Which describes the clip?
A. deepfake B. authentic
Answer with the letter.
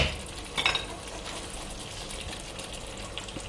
B